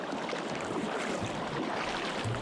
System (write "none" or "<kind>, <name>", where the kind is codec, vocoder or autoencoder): none